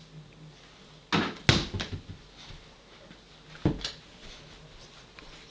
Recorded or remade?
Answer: recorded